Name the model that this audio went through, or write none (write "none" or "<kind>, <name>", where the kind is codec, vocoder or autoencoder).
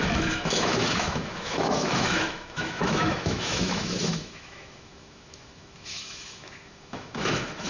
autoencoder, DAC-VAE